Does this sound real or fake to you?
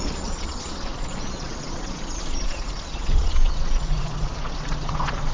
fake